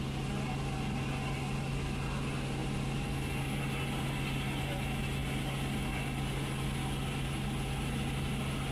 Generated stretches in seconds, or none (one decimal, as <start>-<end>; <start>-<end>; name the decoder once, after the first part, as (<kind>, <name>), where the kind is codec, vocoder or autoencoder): none